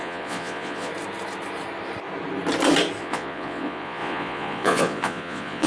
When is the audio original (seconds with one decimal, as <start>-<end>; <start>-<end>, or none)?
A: 0.9-3.0